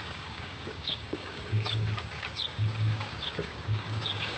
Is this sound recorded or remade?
remade